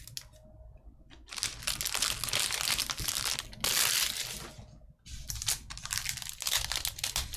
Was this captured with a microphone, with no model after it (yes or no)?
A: yes